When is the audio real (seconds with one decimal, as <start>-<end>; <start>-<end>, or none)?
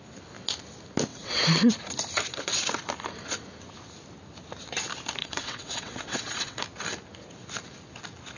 0.0-1.1; 1.7-5.2; 6.6-8.4